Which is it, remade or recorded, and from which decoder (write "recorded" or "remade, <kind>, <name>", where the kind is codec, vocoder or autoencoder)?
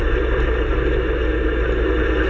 recorded